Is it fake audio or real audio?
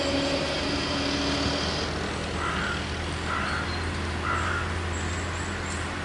real